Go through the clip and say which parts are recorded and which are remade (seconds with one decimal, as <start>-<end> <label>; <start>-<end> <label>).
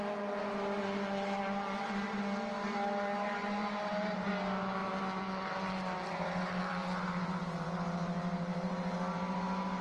0.0-2.6 recorded; 2.6-4.3 remade; 4.3-4.8 recorded; 4.8-9.8 remade